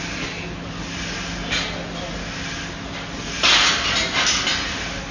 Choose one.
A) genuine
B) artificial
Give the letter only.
A